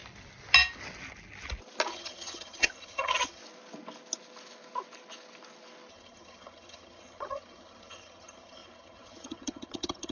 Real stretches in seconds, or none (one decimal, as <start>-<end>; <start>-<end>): 0.0-1.9; 3.4-5.9